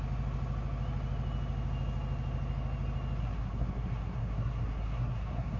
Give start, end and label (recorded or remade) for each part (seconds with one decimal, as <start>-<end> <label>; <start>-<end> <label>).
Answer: 0.0-3.2 recorded; 3.2-5.6 remade